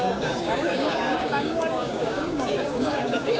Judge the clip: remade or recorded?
remade